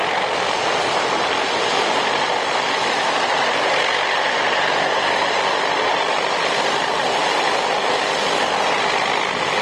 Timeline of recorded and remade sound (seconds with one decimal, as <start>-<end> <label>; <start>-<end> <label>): 0.0-9.6 recorded